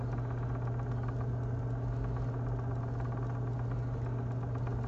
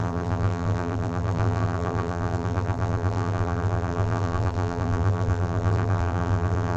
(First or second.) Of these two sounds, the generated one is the second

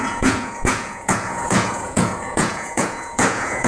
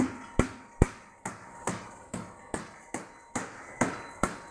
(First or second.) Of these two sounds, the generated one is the first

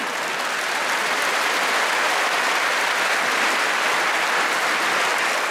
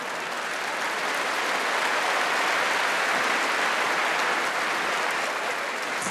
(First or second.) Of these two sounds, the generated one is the first